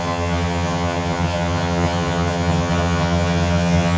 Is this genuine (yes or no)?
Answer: no